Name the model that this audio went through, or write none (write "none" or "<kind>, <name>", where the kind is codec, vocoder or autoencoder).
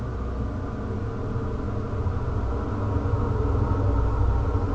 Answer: none